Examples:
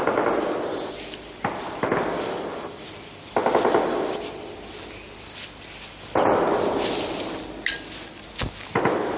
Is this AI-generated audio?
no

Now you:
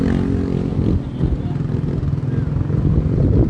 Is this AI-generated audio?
no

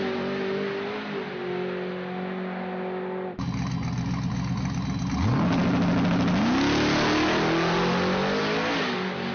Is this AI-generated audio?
no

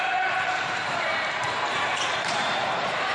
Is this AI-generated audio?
yes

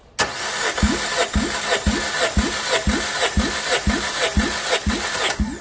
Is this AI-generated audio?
no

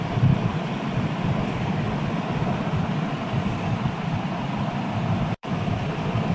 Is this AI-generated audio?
yes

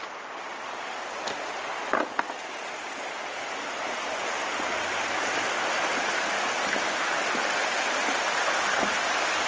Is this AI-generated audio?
no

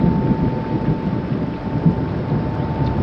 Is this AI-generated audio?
no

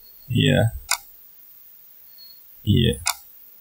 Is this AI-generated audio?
no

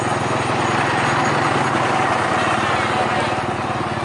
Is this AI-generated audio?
no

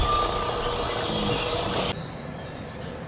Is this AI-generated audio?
no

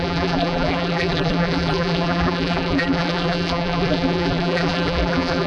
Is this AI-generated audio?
yes